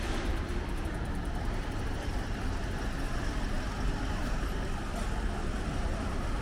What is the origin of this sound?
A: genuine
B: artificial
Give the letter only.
A